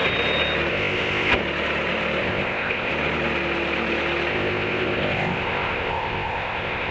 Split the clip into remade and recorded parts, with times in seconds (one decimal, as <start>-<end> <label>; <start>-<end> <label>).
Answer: 0.0-0.7 recorded; 0.7-1.4 remade; 1.4-2.2 recorded; 2.2-2.9 remade; 2.9-4.3 recorded; 4.3-6.9 remade